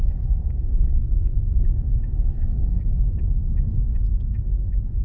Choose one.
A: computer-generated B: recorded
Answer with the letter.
A